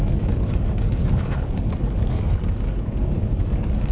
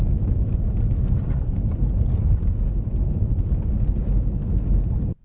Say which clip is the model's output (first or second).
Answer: first